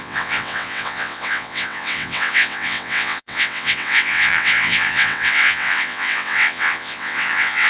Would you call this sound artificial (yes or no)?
yes